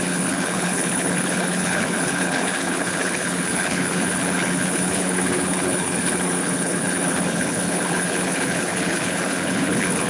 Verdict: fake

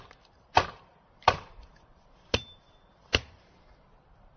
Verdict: real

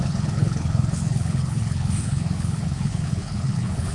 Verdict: fake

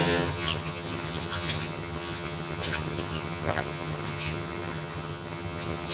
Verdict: fake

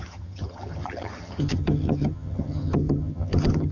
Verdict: fake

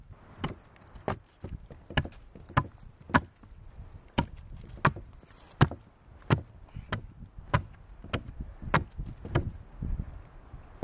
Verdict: real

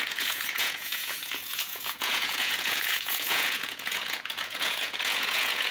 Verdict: fake